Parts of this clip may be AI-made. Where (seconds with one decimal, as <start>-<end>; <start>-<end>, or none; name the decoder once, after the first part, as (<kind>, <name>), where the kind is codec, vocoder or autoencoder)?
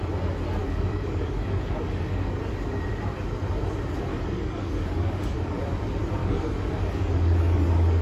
0.6-2.4 (codec, DAC); 4.1-5.6; 6.2-8.0